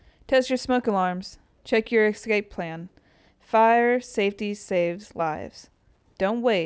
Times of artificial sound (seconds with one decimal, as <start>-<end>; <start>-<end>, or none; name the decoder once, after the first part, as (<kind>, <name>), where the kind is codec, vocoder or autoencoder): none